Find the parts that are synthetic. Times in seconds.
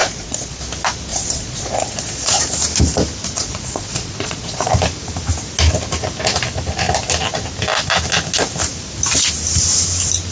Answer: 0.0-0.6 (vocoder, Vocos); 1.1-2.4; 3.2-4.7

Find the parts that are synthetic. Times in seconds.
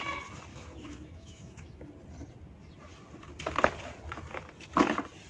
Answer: 0.5-1.9 (autoencoder, DAC-VAE)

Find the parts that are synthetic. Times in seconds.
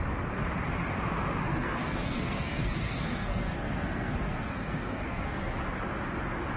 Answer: 1.4-5.4 (codec, SNAC)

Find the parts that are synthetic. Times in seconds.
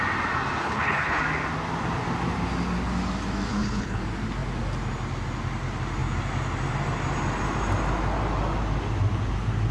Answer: 0.6-1.2 (codec, HILCodec); 3.5-4.0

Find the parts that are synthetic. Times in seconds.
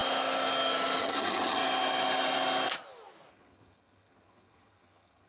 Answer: 1.0-1.6 (vocoder, HiFi-GAN); 3.3-5.3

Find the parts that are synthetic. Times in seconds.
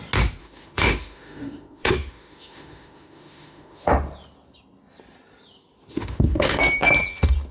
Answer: 0.4-3.9 (autoencoder, DAC-VAE); 5.9-6.6